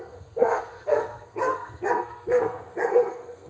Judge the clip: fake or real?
fake